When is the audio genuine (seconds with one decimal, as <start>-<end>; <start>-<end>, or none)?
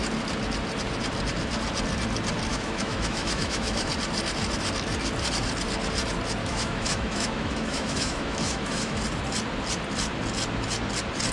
0.0-2.5; 3.9-6.4; 9.0-11.3